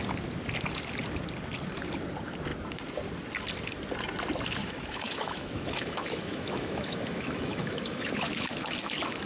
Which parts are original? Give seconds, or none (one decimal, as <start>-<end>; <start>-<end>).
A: 0.0-4.6